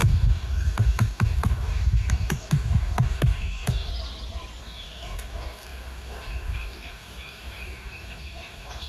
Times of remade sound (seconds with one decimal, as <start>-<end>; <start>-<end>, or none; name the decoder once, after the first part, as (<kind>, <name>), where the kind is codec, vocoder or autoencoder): 0.0-3.9 (codec, DAC); 4.6-8.9